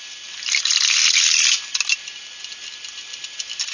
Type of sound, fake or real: real